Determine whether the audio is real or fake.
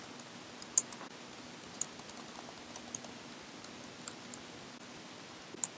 real